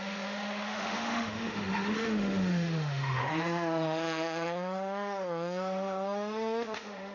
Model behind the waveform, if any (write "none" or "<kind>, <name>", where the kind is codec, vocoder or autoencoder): autoencoder, DAC-VAE